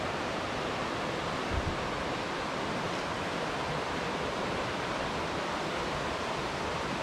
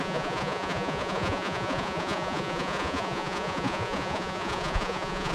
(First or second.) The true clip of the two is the first